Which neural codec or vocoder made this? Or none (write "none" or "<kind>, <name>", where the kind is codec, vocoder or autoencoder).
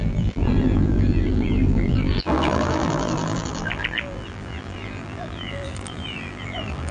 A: vocoder, BigVGAN v2